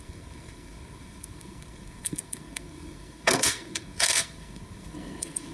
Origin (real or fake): fake